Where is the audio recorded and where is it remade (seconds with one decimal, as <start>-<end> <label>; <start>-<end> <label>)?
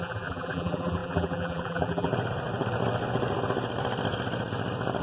0.0-2.1 remade; 2.1-5.0 recorded